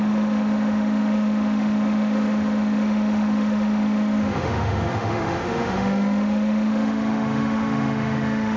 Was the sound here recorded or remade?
remade